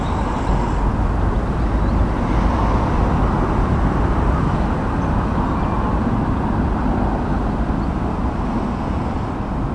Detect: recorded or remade recorded